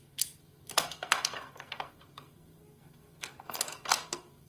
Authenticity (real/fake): fake